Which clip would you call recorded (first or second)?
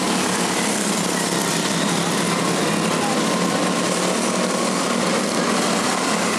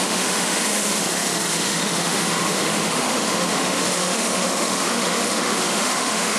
first